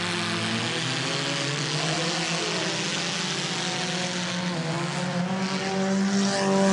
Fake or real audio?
real